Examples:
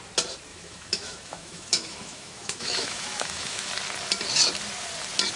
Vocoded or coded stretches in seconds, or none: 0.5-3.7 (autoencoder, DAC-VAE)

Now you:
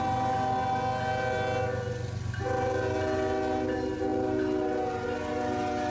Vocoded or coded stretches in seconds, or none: none